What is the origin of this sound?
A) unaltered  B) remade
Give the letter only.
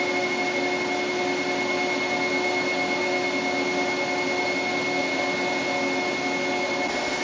A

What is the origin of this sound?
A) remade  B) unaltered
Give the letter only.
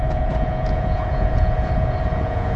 A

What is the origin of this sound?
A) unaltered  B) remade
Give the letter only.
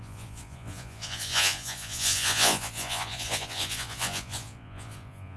B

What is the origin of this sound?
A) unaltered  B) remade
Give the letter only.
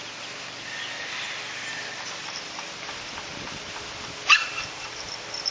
A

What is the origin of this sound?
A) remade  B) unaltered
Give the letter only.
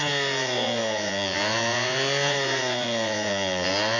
A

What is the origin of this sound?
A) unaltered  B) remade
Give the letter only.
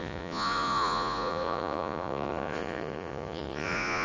B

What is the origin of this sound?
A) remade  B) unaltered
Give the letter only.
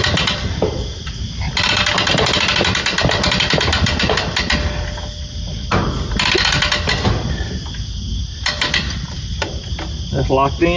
B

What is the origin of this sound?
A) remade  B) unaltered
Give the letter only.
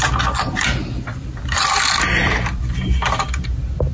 B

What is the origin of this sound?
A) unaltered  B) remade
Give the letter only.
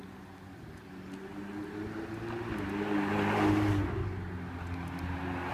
A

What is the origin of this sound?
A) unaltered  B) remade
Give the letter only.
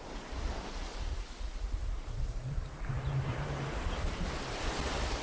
A